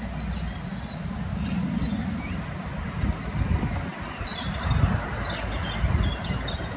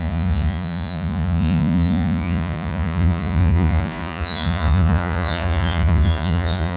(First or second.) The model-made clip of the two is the second